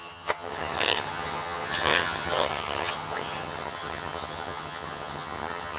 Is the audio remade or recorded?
remade